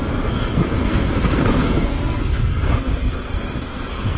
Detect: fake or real fake